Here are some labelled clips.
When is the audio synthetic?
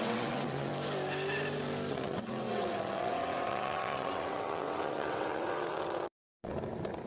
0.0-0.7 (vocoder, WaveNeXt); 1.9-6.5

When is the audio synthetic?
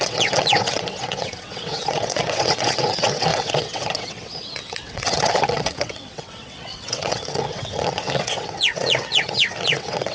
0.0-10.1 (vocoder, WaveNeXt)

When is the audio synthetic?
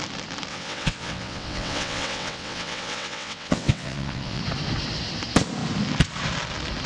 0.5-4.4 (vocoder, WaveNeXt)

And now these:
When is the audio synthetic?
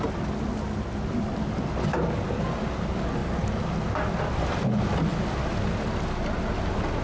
none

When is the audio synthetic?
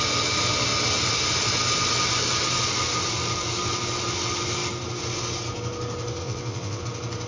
6.2-6.8 (vocoder, WaveNeXt)